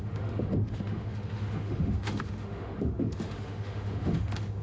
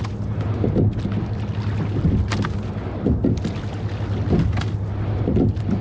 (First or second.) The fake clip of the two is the first